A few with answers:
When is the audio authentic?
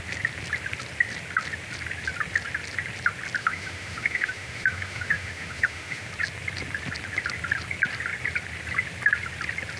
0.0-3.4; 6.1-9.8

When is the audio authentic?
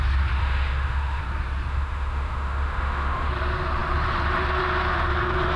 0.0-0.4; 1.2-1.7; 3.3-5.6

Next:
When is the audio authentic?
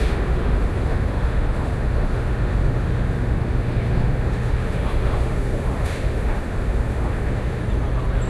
7.6-8.3